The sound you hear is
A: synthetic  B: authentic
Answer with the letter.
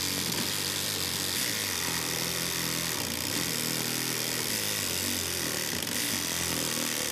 B